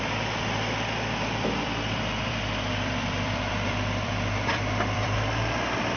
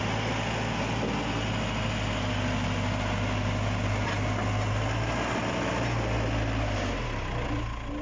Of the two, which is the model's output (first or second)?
first